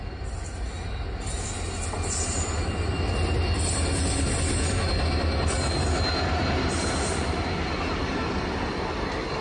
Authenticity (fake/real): real